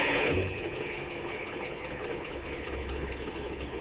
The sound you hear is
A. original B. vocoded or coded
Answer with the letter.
B